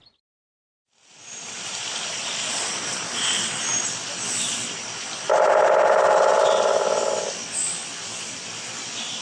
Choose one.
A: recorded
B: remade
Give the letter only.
B